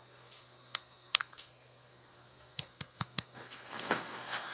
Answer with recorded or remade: remade